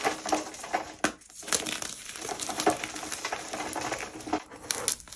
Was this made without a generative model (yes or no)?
yes